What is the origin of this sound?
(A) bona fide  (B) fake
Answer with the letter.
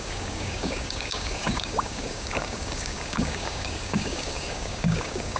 B